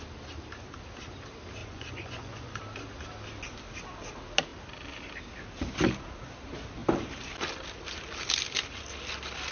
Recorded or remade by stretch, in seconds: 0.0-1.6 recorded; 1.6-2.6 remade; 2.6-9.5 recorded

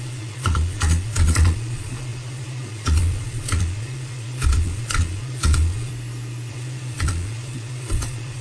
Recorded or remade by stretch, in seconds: 0.0-5.9 remade; 5.9-6.5 recorded; 6.5-8.4 remade

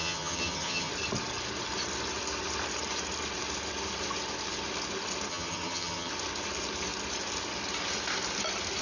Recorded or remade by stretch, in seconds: 0.0-0.9 remade; 0.9-5.3 recorded; 5.3-6.1 remade; 6.1-8.8 recorded

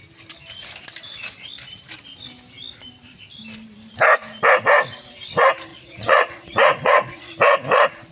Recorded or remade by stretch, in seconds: 0.0-5.7 recorded; 5.7-7.3 remade; 7.3-8.1 recorded

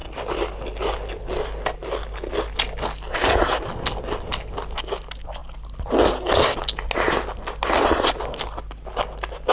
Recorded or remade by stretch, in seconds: 0.0-9.5 recorded

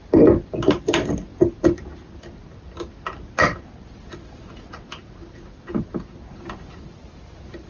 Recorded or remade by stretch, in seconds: 0.0-7.7 recorded

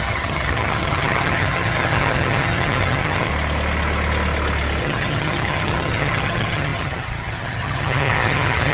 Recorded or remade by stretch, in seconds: 0.0-3.3 remade; 3.3-4.8 recorded; 4.8-8.7 remade